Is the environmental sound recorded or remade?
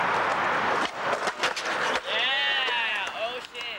recorded